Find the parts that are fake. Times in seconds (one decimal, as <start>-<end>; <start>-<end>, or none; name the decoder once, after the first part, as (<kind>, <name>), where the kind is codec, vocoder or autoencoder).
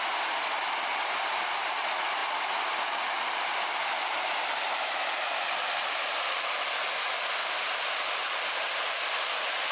2.2-6.2 (vocoder, BigVGAN v2); 7.4-8.0